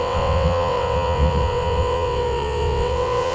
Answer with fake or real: fake